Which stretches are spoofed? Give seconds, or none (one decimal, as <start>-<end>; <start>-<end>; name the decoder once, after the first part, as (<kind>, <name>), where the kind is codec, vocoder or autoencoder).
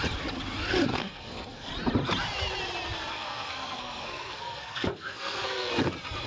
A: 0.9-1.7 (codec, SNAC); 3.1-5.7